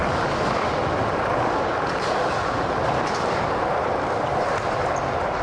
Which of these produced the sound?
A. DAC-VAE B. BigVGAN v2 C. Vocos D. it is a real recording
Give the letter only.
D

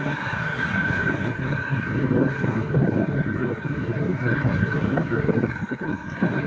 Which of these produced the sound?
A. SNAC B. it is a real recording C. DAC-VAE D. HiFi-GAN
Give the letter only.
A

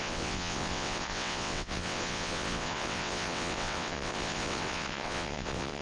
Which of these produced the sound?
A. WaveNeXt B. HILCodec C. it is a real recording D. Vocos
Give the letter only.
A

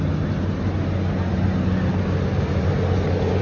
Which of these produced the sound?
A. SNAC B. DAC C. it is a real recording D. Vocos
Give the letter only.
C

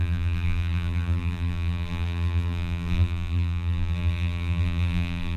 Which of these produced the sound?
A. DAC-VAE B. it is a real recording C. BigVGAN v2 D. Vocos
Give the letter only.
C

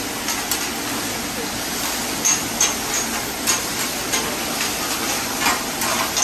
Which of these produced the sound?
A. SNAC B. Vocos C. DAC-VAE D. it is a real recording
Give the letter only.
D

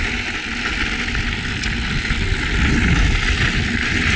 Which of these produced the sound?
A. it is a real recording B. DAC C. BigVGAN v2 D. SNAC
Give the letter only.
A